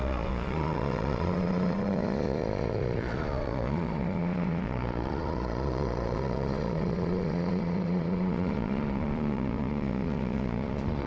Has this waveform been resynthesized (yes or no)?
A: yes